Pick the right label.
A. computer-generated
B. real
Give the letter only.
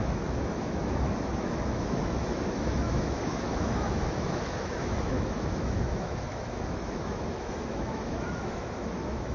A